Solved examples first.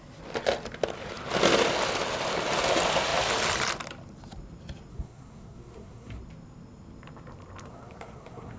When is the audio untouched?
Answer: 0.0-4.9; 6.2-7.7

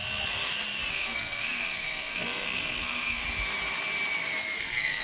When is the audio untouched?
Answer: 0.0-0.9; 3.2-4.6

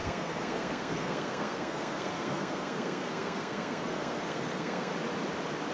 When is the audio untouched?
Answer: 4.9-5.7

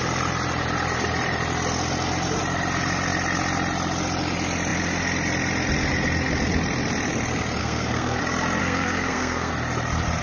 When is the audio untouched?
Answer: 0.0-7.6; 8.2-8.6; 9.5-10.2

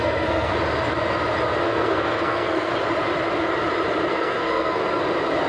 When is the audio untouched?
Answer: 0.5-1.6; 2.7-4.1; 4.8-5.5